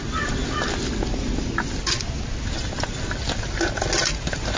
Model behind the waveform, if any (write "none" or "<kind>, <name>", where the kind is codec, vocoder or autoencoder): none